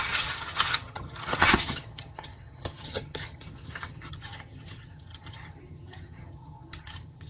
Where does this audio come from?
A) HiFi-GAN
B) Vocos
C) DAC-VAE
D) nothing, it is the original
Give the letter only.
A